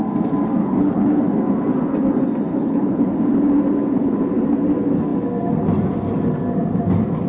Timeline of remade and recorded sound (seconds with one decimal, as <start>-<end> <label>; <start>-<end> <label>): 0.0-0.6 recorded; 0.6-1.2 remade; 1.2-2.5 recorded; 2.5-3.1 remade; 3.1-7.3 recorded